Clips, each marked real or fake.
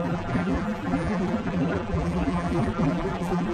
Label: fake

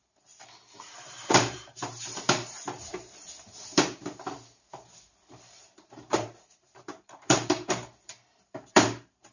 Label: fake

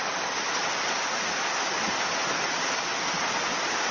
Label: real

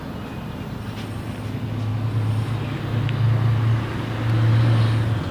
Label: real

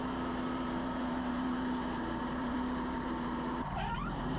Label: fake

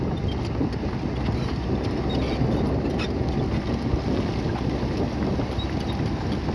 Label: real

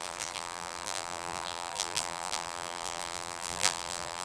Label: fake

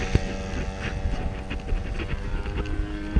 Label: real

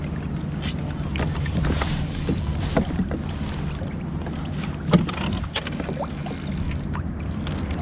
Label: real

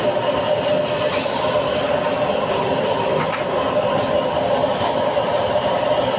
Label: real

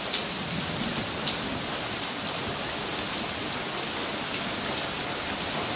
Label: real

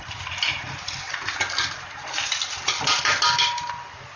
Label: real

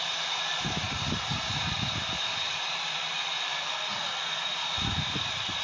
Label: fake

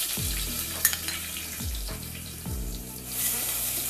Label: fake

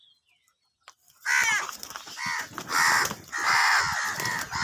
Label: real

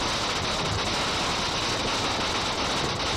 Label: real